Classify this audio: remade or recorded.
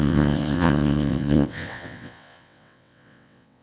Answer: remade